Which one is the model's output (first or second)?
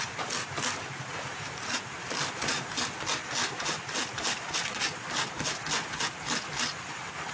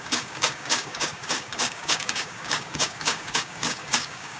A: second